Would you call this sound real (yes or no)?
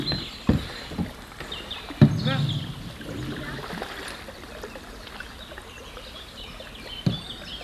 yes